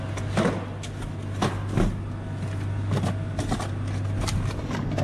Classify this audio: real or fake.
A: real